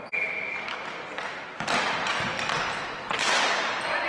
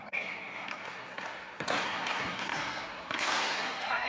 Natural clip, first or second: first